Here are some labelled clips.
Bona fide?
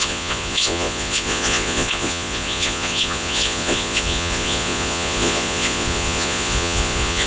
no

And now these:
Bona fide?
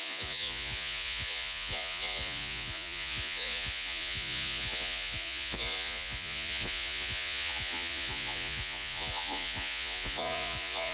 no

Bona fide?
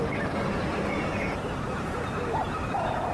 yes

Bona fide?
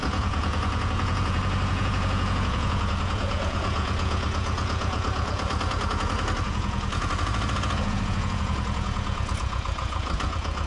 no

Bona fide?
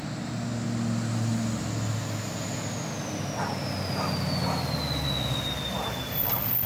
yes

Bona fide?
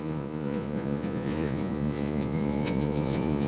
no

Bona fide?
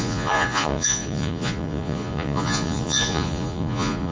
no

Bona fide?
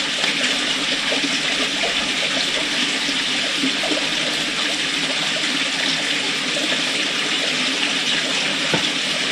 yes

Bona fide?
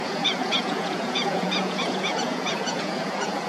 no